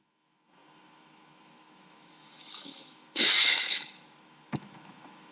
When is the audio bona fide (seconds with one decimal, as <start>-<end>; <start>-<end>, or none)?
none